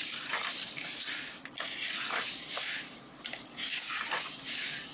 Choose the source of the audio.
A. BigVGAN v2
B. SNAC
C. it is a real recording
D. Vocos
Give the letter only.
C